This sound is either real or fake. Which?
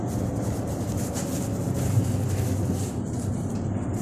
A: real